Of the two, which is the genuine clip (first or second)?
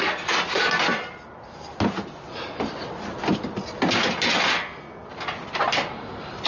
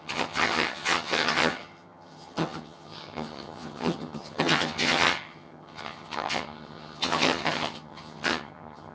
first